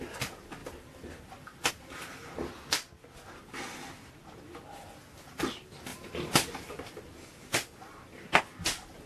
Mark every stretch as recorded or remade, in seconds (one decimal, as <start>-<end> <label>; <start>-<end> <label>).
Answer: 0.0-0.6 recorded; 0.6-1.7 remade; 1.7-9.1 recorded